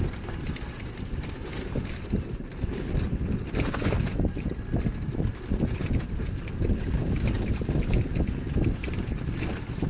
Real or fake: real